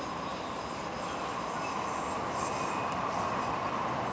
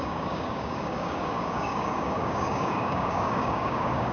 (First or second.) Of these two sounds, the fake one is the second